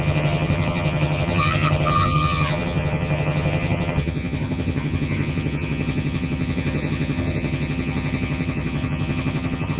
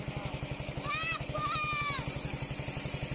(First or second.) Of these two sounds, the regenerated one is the first